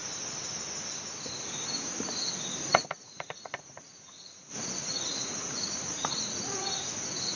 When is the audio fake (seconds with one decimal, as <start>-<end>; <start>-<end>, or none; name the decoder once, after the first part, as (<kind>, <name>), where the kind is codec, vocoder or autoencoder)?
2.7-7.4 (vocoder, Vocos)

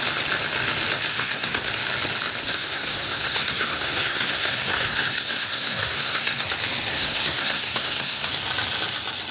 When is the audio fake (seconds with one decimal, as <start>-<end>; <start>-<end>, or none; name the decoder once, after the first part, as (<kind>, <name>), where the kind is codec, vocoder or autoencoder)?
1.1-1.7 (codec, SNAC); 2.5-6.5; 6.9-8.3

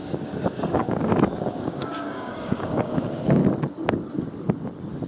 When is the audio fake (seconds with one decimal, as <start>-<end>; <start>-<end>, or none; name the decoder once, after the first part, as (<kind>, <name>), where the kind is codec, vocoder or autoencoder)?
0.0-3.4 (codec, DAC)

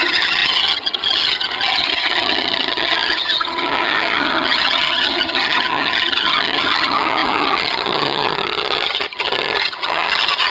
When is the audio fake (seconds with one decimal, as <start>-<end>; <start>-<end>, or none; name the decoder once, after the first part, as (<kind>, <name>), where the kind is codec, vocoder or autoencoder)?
0.0-10.5 (vocoder, HiFi-GAN)